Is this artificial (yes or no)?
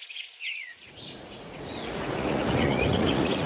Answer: yes